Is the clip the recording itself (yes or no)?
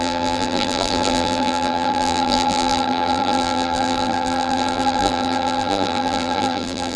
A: no